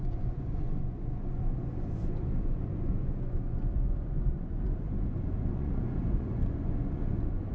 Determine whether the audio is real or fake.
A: fake